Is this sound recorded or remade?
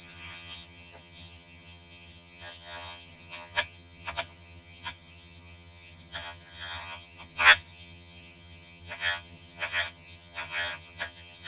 remade